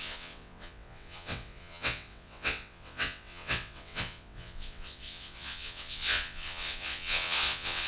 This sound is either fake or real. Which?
fake